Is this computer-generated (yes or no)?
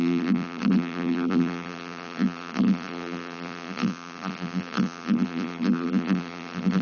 yes